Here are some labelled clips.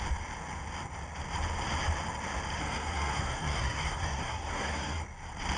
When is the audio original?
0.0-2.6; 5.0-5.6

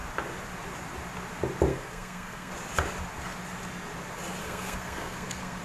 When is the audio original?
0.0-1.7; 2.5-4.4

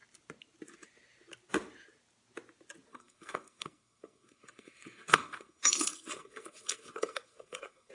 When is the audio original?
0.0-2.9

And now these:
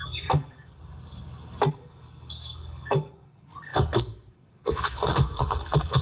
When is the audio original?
0.8-1.7

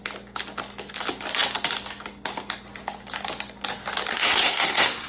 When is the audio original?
0.0-4.1

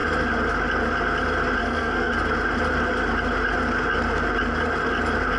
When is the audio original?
0.0-1.6; 2.1-5.4